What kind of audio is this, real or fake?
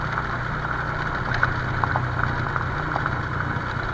real